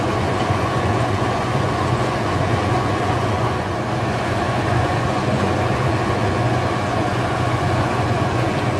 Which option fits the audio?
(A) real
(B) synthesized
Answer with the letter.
B